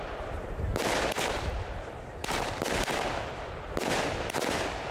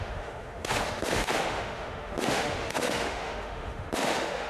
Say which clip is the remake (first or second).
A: second